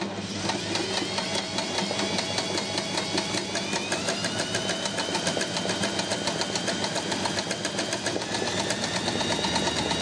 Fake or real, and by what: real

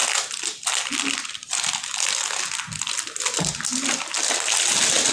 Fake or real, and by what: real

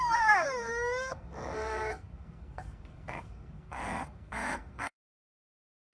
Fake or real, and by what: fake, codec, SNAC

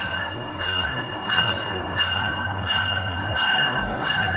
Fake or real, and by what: fake, codec, SNAC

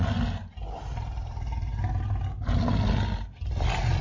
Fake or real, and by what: real